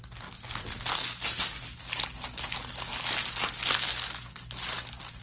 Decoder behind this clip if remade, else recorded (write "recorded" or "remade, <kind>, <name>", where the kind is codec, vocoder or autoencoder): recorded